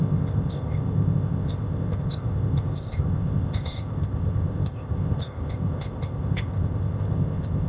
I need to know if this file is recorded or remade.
remade